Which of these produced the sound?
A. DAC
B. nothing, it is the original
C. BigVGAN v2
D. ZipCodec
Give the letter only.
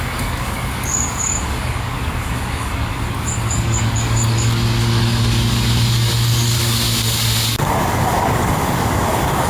A